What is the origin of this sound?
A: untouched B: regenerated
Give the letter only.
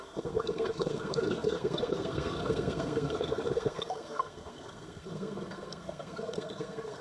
B